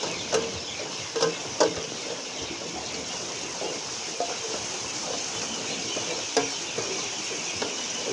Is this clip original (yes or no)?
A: yes